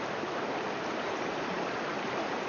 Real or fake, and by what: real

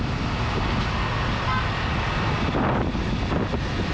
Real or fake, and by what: real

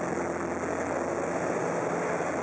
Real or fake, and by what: real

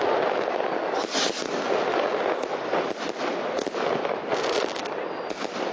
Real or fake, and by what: real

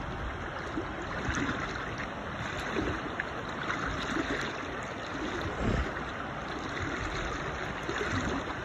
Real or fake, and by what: real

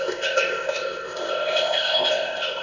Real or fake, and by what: fake, codec, ZipCodec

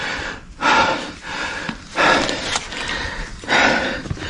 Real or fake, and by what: real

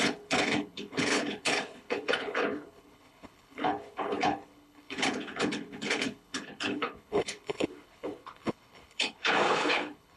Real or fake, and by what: fake, codec, HILCodec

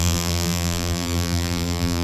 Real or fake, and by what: fake, vocoder, BigVGAN v2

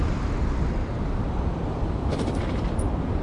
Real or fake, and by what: fake, vocoder, BigVGAN v2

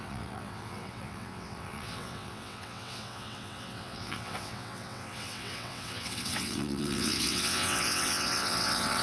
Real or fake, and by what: fake, vocoder, WaveNeXt